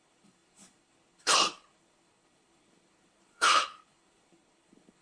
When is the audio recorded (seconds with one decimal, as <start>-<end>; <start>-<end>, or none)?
none